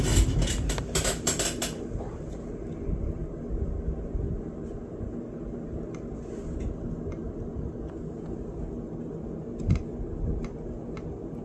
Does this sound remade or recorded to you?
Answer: recorded